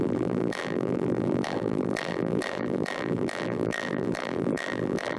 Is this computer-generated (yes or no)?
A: yes